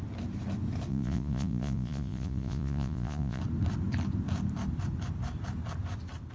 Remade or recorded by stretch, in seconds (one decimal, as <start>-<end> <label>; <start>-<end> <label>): 0.0-0.9 recorded; 0.9-3.4 remade; 3.4-6.3 recorded